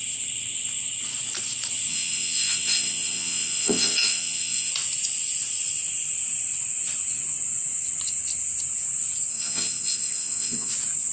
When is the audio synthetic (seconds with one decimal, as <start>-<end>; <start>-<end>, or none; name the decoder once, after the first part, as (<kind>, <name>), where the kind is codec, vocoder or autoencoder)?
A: 1.9-4.7 (vocoder, WaveNeXt); 9.3-10.7